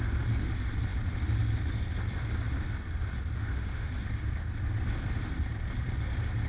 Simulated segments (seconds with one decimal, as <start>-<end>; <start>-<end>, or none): 3.4-3.9